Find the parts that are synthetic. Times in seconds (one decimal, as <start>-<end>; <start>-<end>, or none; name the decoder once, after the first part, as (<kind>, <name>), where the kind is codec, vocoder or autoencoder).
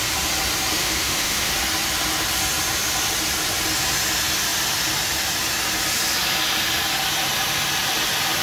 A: 0.8-1.5 (autoencoder, DAC-VAE)